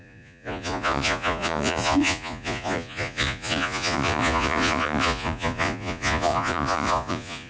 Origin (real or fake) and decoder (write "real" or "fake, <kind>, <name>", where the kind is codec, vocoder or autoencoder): fake, vocoder, Vocos